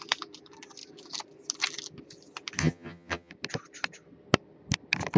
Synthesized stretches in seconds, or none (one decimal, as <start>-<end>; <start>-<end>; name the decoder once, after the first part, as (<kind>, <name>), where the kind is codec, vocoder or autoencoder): 2.6-3.3 (vocoder, HiFi-GAN)